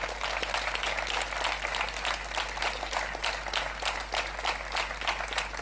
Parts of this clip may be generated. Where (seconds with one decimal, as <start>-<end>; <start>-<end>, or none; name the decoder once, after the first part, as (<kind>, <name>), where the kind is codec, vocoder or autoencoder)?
none

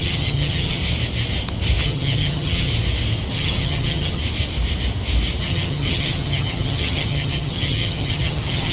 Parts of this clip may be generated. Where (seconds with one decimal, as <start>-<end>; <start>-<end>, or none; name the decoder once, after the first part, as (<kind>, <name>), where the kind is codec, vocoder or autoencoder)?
0.0-0.8 (vocoder, HiFi-GAN); 1.8-2.7; 3.3-4.2; 5.4-8.7